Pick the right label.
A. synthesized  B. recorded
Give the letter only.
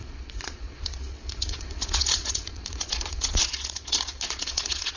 A